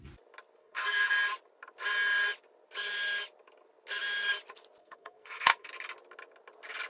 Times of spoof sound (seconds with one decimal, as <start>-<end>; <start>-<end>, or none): 0.6-1.1; 4.8-5.7